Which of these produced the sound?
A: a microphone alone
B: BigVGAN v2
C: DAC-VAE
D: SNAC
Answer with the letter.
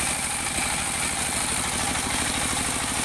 A